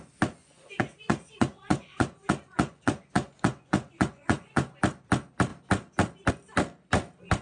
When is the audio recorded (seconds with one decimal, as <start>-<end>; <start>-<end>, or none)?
0.0-0.4; 4.8-7.4